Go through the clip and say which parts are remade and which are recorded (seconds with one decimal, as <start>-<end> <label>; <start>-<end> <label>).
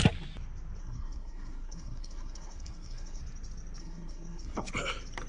0.0-0.8 recorded; 0.8-3.2 remade; 3.2-3.8 recorded; 3.8-4.7 remade; 4.7-5.3 recorded